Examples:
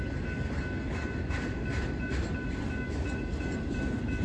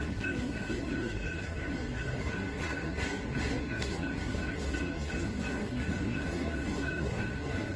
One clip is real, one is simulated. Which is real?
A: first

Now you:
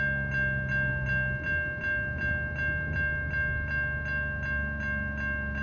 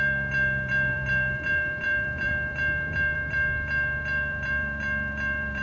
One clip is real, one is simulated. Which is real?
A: first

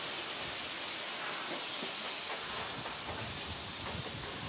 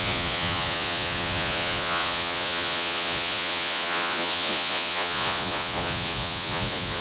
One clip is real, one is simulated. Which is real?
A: first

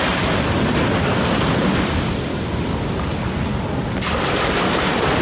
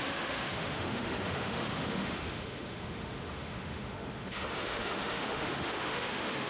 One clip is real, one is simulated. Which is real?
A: first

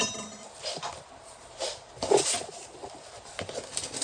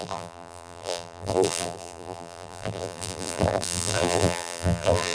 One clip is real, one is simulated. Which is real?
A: first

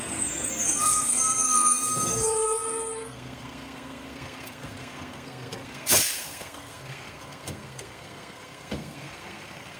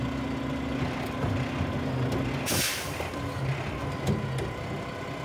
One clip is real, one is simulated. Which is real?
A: second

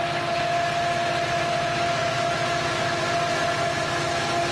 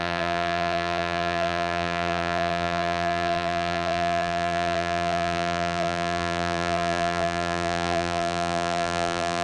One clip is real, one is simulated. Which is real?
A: first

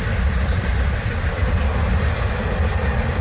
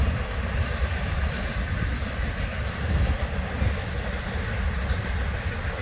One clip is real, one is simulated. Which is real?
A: second